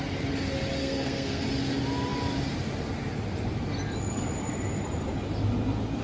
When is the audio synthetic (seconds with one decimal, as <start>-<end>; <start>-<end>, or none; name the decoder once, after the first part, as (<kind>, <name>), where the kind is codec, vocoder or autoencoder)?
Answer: 0.8-1.5 (codec, SNAC)